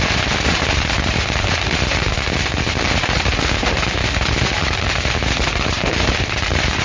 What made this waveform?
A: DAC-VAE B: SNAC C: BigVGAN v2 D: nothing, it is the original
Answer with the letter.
C